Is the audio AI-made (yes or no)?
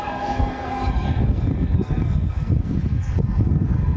yes